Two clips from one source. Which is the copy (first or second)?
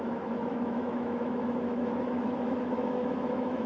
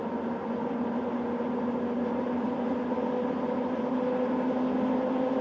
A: first